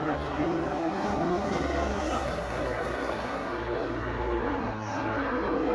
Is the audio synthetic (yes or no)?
yes